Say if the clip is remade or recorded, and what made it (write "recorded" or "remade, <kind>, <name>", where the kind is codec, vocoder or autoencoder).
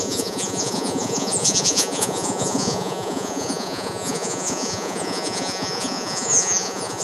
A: remade, vocoder, Vocos